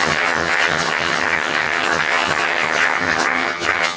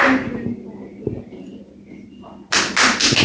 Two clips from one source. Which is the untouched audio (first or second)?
second